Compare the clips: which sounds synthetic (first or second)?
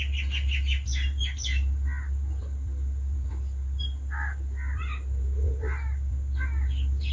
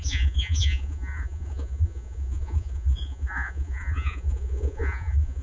second